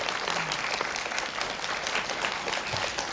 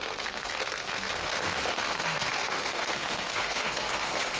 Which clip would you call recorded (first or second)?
first